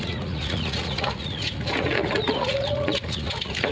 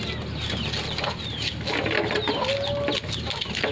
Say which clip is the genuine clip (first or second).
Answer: second